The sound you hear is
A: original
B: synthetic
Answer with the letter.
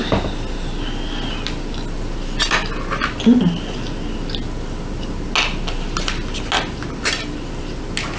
A